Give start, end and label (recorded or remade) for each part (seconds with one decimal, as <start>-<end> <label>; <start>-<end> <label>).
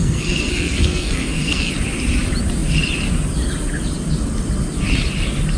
0.0-1.7 remade; 1.7-5.6 recorded